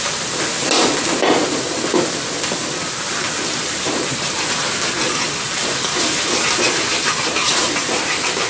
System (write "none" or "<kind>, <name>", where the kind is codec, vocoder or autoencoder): none